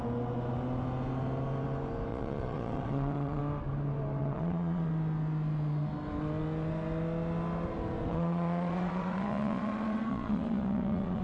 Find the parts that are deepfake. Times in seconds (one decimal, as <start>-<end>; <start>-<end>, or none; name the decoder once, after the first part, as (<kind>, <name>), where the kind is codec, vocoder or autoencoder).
2.1-3.4 (vocoder, Vocos); 4.2-4.9; 8.1-11.2